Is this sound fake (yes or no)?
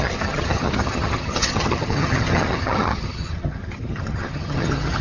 yes